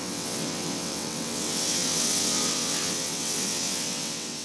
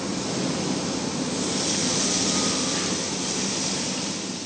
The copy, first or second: first